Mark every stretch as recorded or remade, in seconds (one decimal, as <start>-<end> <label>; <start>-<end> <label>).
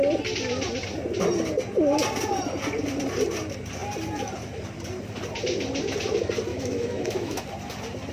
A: 0.0-6.5 recorded; 6.5-7.4 remade; 7.4-8.1 recorded